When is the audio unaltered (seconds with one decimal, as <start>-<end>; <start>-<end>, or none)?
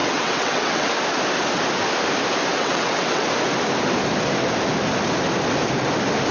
0.9-2.5; 3.3-6.3